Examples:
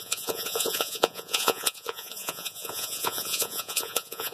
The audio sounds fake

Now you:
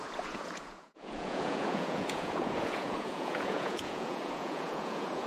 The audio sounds fake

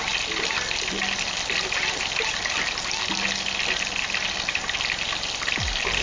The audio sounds real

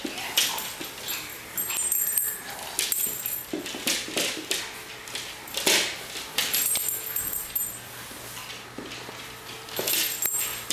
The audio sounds real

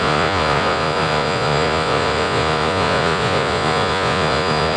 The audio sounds fake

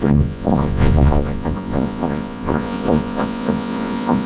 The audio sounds fake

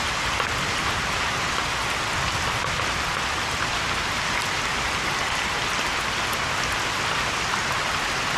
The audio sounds real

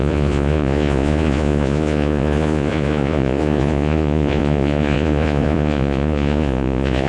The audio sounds fake